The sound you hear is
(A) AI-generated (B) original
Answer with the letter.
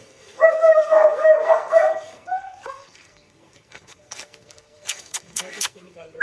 A